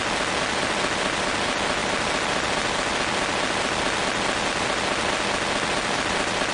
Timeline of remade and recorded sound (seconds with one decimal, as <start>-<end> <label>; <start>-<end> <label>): 0.0-6.5 recorded